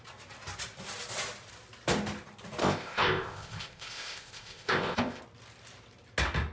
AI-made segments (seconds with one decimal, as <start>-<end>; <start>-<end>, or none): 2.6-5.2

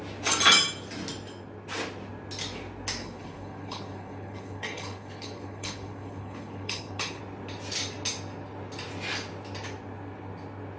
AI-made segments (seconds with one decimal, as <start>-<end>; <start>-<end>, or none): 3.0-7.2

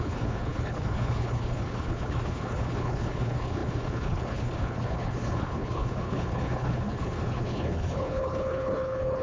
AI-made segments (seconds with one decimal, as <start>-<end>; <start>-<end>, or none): 0.0-9.2